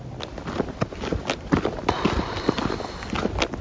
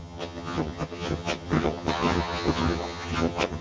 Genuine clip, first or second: first